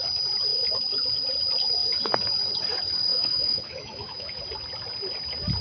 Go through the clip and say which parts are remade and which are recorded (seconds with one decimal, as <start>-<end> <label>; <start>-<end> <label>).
0.0-3.1 recorded; 3.1-4.4 remade; 4.4-5.6 recorded